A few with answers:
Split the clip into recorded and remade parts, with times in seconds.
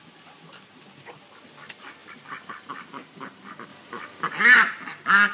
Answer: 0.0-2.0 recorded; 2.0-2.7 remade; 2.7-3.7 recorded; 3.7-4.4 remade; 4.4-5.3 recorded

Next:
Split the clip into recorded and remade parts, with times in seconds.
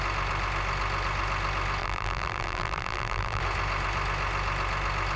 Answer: 0.0-1.8 recorded; 1.8-3.4 remade; 3.4-5.2 recorded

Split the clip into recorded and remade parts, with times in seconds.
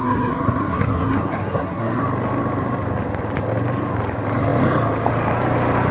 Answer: 0.0-2.0 remade; 2.0-5.9 recorded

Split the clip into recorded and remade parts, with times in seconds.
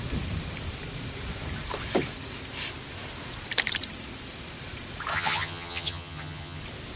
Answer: 0.0-5.1 recorded; 5.1-6.6 remade; 6.6-7.0 recorded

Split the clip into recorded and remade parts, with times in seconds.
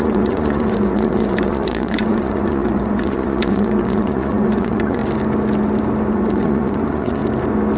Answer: 0.0-5.0 remade; 5.0-6.1 recorded; 6.1-7.2 remade; 7.2-7.8 recorded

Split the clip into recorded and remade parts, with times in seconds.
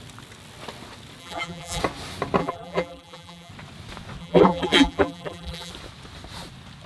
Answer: 0.0-1.2 recorded; 1.2-1.8 remade; 1.8-2.4 recorded; 2.4-3.5 remade; 3.5-4.2 recorded; 4.2-5.7 remade; 5.7-6.9 recorded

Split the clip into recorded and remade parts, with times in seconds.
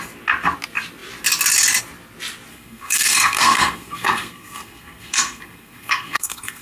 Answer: 0.0-2.5 recorded; 2.5-6.6 remade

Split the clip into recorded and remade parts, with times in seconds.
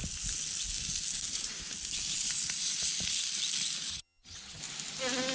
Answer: 0.0-3.9 recorded; 3.9-4.6 remade; 4.6-5.3 recorded